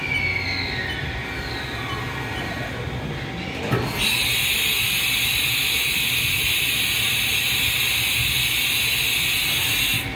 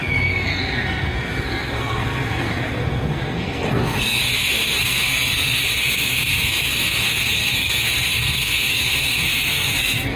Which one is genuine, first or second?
first